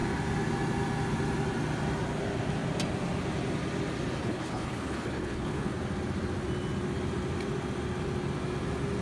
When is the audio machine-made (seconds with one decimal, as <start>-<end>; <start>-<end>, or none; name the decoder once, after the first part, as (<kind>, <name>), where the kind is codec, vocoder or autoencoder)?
4.2-5.7 (codec, HILCodec)